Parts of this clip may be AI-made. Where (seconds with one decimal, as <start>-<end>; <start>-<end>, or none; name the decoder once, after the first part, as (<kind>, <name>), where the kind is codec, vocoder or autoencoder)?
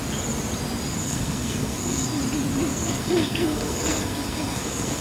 1.0-2.2 (codec, SNAC); 2.7-5.0